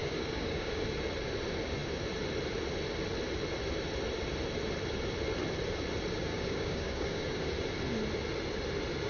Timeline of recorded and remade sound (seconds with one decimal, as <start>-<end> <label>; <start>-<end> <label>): 0.0-0.8 remade; 0.8-6.3 recorded; 6.3-7.4 remade; 7.4-9.1 recorded